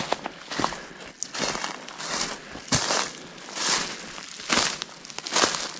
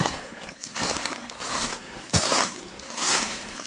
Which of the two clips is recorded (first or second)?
first